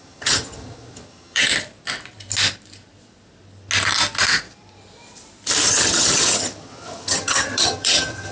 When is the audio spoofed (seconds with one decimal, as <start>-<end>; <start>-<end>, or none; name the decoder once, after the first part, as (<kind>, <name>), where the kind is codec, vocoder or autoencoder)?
0.0-1.5 (vocoder, HiFi-GAN); 5.7-8.3